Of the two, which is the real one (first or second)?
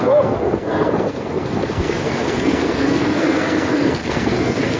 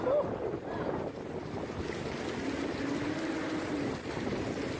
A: second